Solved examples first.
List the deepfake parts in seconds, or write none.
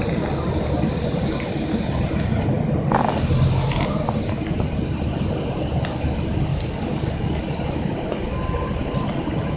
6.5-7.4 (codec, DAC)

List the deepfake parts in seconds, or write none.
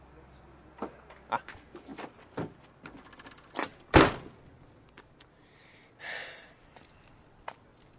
6.6-7.6 (vocoder, BigVGAN v2)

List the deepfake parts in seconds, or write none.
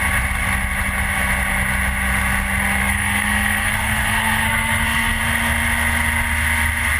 2.8-5.2 (codec, SNAC)